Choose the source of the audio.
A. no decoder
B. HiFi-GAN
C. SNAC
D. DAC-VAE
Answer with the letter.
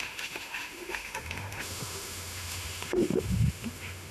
D